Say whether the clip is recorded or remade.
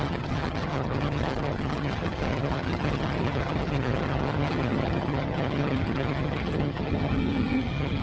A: remade